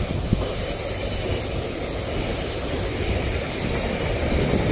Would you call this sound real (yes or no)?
yes